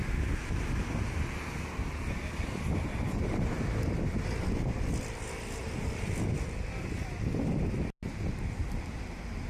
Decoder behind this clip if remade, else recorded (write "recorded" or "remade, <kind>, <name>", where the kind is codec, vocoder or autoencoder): recorded